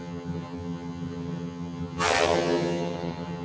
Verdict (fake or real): fake